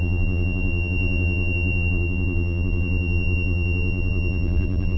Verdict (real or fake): fake